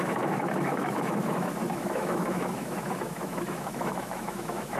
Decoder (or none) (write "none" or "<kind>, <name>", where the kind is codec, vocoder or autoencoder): autoencoder, DAC-VAE